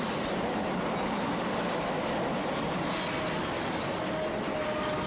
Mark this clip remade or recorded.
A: recorded